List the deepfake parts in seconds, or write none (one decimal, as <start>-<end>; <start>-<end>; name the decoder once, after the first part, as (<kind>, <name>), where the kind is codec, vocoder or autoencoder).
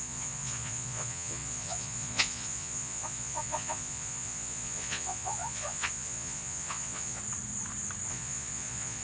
0.0-7.2 (vocoder, Vocos); 8.1-9.0